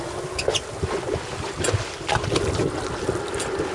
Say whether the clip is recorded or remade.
recorded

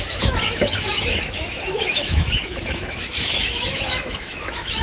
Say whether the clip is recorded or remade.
remade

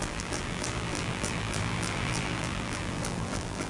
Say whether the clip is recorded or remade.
remade